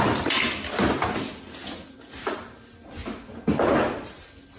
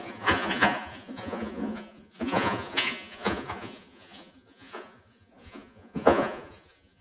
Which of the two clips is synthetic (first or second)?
second